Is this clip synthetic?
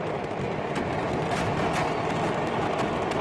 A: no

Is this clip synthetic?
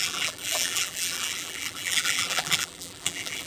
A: yes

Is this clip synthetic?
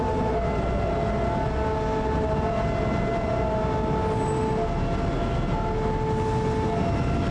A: no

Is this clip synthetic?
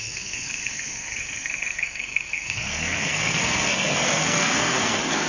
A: yes